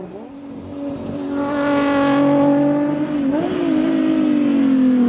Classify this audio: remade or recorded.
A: recorded